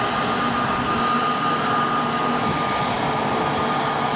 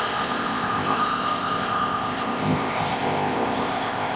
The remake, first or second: second